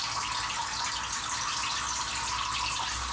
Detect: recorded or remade recorded